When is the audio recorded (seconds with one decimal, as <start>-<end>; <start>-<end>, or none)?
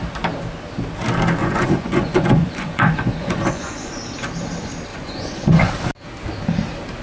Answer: 0.0-1.4; 3.9-4.9; 5.7-7.0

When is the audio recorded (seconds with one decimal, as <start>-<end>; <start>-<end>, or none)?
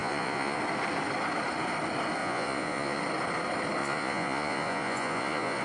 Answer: 0.6-2.2; 3.0-3.8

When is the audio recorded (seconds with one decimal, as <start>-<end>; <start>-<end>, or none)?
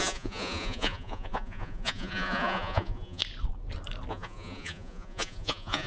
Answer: 3.2-4.1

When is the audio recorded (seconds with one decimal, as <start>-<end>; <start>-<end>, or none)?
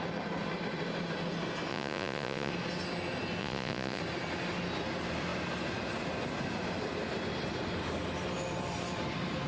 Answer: 0.0-1.7; 2.5-3.4; 4.0-9.5